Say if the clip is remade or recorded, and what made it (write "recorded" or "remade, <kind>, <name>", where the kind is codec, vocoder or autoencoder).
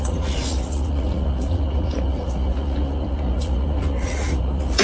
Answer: remade, vocoder, Vocos